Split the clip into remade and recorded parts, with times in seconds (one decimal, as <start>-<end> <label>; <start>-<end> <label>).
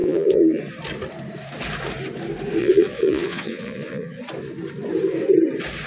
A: 0.0-0.6 remade; 0.6-2.6 recorded; 2.6-4.2 remade; 4.2-5.9 recorded